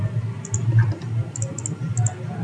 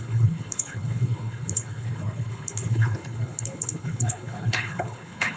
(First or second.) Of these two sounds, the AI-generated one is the second